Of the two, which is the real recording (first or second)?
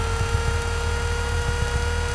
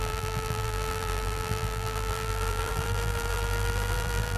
first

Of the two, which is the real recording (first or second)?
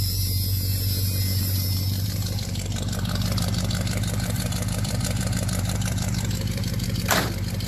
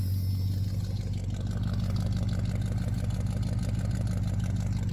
second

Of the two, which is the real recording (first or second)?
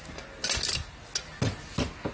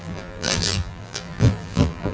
first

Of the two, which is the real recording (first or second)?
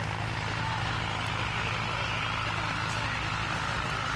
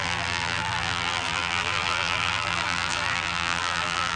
first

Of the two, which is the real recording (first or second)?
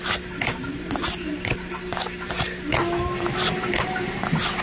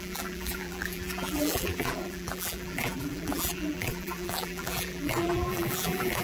first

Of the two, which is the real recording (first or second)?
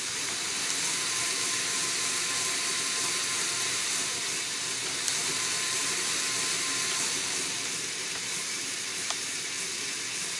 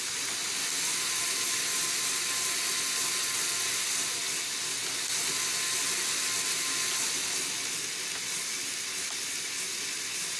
second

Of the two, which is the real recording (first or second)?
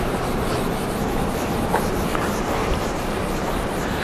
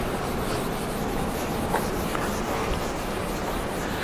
second